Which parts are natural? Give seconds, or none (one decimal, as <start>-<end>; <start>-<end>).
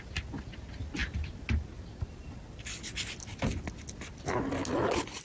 0.0-5.2